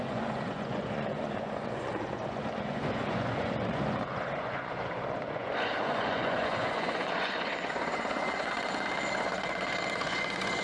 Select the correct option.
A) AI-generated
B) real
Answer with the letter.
A